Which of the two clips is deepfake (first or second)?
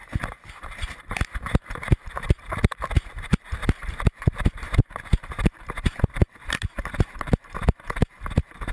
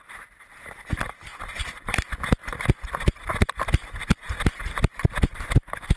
first